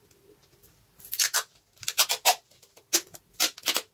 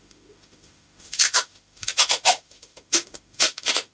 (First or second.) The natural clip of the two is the first